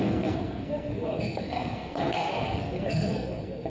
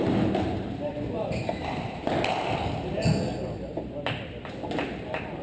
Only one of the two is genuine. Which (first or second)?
second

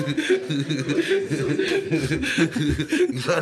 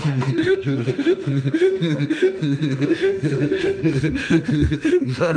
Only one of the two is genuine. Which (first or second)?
first